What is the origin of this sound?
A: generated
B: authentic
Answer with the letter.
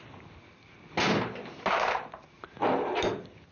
B